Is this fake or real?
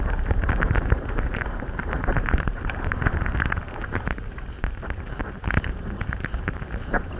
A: fake